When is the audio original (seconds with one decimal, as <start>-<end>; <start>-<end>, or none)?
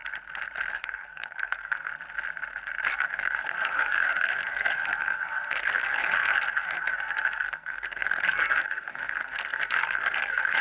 0.0-0.7; 1.9-2.9